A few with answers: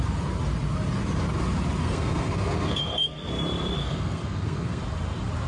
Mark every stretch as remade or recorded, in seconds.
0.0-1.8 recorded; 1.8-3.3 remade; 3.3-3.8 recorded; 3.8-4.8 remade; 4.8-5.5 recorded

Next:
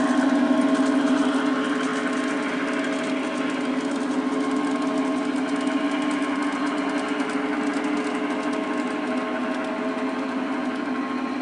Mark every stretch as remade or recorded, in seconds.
0.0-11.4 recorded

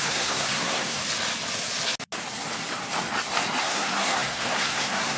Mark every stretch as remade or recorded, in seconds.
0.0-1.0 remade; 1.0-3.6 recorded; 3.6-5.2 remade